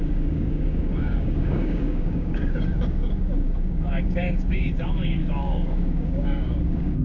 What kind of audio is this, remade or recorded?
remade